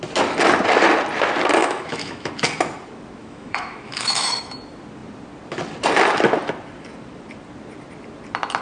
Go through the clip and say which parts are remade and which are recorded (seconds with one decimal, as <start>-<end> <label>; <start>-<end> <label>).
0.0-1.6 recorded; 1.6-2.3 remade; 2.3-3.2 recorded; 3.2-4.6 remade; 4.6-8.6 recorded

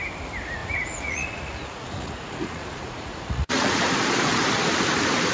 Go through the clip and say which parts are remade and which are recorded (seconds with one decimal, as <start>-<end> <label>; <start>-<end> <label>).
0.0-0.6 recorded; 0.6-3.8 remade; 3.8-5.3 recorded

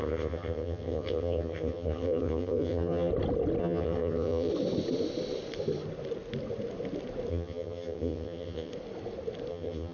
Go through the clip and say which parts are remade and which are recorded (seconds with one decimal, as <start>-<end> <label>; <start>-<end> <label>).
0.0-3.1 remade; 3.1-3.6 recorded; 3.6-4.5 remade; 4.5-7.3 recorded; 7.3-8.7 remade; 8.7-9.5 recorded; 9.5-9.9 remade